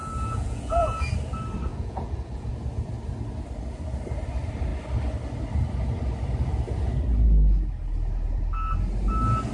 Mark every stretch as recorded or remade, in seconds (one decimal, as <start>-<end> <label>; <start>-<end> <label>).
0.0-1.1 remade; 1.1-1.7 recorded; 1.7-2.5 remade; 2.5-9.5 recorded

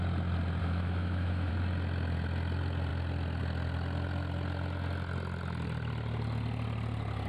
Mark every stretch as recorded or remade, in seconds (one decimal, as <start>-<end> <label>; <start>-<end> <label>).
0.0-0.6 recorded; 0.6-1.5 remade; 1.5-7.3 recorded

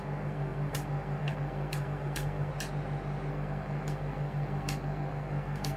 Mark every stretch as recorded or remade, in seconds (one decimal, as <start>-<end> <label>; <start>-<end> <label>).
0.0-2.5 remade; 2.5-3.3 recorded; 3.3-5.8 remade